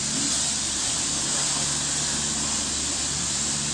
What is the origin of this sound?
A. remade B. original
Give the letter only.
B